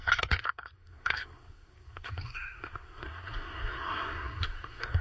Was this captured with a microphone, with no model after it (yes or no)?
no